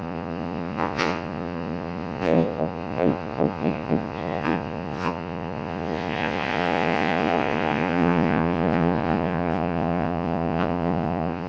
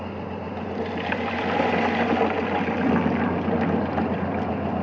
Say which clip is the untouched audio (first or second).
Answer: second